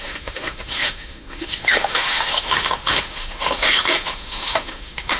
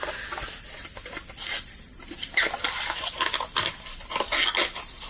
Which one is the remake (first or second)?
first